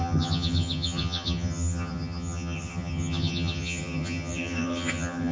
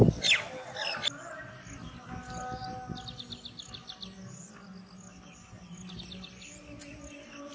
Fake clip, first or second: first